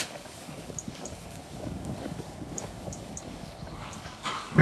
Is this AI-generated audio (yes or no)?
yes